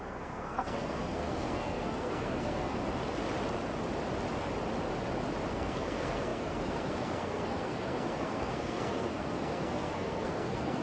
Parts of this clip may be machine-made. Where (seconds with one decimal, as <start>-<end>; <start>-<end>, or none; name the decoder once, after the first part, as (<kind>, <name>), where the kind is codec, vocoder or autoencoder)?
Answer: 0.0-2.8 (codec, SNAC); 5.5-10.8